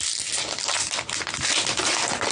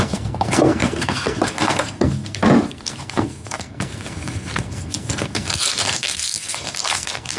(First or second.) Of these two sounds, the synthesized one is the second